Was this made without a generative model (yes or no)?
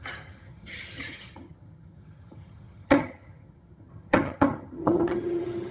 no